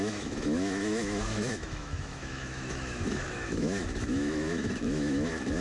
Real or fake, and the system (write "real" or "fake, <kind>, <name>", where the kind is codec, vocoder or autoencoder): fake, autoencoder, DAC-VAE